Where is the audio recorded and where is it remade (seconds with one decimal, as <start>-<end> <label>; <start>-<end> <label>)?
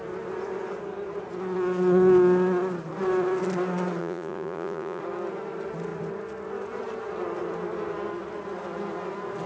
0.0-4.0 recorded; 4.0-5.0 remade; 5.0-9.5 recorded